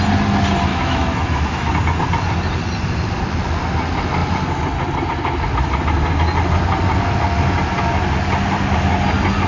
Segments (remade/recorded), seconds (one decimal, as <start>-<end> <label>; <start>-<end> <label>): 0.0-0.7 recorded; 0.7-1.7 remade; 1.7-9.5 recorded